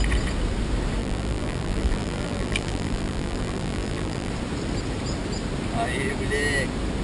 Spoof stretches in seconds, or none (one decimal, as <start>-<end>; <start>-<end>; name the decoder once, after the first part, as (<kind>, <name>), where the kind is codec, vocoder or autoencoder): 1.0-4.3 (vocoder, BigVGAN v2)